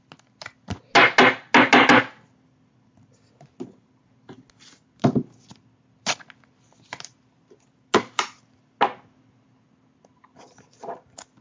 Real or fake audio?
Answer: real